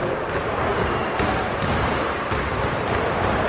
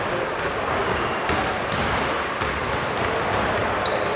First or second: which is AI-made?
first